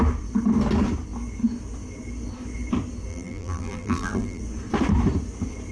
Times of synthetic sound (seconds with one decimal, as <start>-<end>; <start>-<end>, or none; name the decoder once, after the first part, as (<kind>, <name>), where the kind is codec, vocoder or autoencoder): 3.1-4.4 (vocoder, BigVGAN v2)